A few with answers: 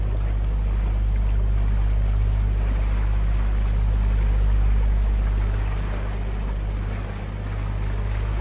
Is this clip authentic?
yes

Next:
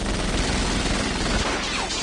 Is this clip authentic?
yes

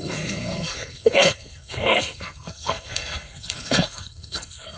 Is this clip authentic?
no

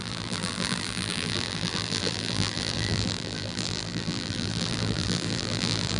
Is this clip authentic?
no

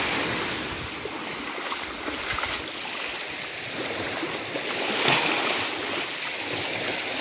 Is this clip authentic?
yes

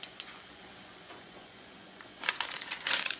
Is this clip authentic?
no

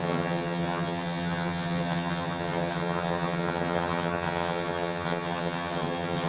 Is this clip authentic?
no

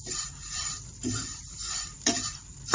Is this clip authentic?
no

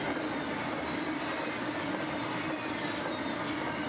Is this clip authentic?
yes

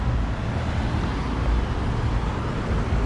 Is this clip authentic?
yes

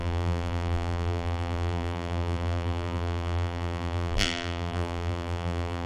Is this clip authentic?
no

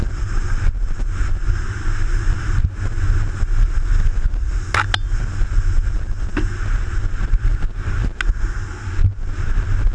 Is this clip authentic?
yes